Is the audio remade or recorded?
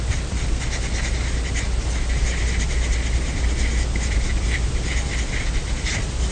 recorded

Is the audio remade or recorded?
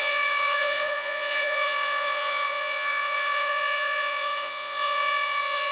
remade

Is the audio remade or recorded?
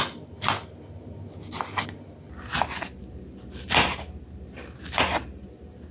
recorded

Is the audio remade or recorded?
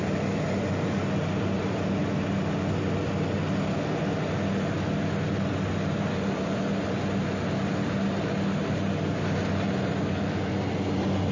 recorded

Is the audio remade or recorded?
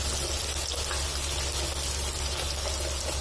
recorded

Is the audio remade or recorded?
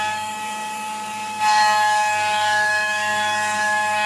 remade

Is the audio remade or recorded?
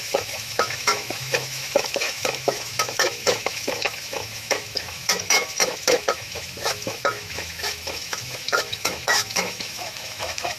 remade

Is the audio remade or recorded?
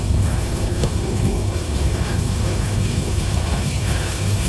remade